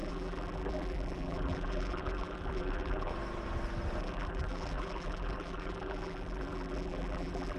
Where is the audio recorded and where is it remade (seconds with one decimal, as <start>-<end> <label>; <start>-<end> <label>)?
0.0-3.1 remade; 3.1-4.0 recorded; 4.0-7.6 remade